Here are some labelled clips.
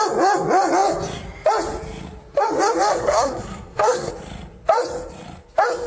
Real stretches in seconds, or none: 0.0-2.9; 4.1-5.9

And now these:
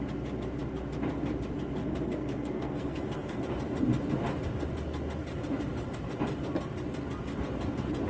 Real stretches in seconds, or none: 0.0-1.8; 3.4-8.1

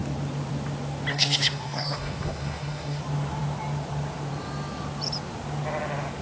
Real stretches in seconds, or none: 0.0-1.1; 3.0-6.2